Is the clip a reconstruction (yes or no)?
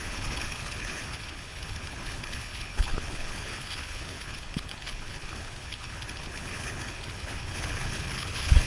yes